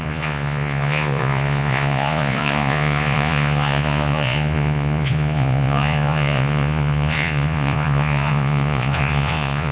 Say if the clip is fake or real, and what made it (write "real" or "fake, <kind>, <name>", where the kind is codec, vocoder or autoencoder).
fake, vocoder, Vocos